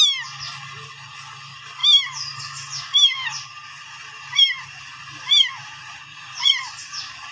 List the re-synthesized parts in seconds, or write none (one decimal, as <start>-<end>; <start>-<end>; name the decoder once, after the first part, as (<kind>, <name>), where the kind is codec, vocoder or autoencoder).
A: 5.8-6.5 (vocoder, Vocos)